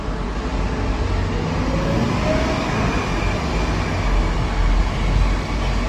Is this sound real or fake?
real